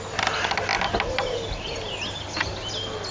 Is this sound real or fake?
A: real